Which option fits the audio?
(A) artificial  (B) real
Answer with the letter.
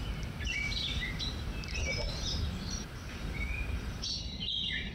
A